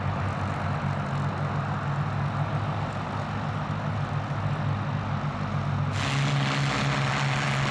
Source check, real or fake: real